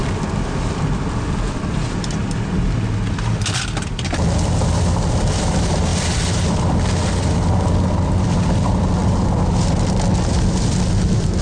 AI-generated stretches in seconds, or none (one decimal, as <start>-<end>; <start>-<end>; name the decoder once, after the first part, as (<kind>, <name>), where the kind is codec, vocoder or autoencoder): none